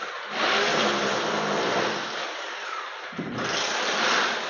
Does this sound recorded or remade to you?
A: recorded